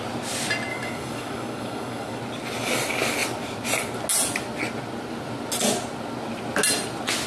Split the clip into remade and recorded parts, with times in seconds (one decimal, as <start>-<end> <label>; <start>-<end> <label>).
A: 0.0-0.7 recorded; 0.7-2.2 remade; 2.2-7.3 recorded

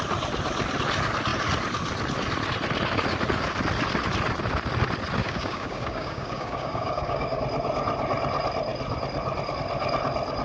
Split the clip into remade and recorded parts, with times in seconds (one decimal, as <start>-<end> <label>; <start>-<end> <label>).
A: 0.0-5.2 recorded; 5.2-7.4 remade; 7.4-10.4 recorded

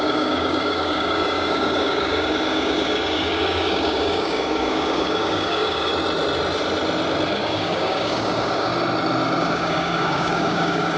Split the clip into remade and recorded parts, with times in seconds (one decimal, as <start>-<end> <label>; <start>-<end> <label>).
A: 0.0-5.9 remade; 5.9-7.3 recorded; 7.3-8.7 remade; 8.7-9.4 recorded; 9.4-11.0 remade

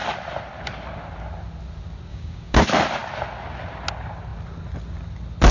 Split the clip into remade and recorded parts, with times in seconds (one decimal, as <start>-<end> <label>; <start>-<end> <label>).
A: 0.0-2.1 recorded; 2.1-2.6 remade; 2.6-5.5 recorded